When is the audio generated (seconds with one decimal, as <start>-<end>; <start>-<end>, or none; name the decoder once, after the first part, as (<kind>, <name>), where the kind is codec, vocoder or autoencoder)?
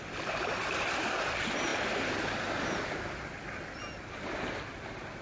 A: none